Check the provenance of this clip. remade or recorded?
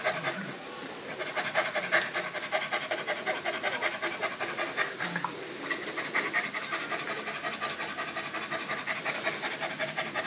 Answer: recorded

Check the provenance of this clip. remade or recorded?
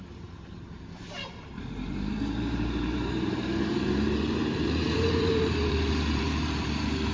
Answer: remade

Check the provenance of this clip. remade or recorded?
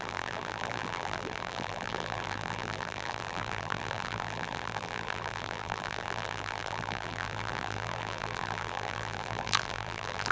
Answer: remade